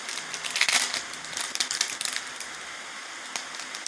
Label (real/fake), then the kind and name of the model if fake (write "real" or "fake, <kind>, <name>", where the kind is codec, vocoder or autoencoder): real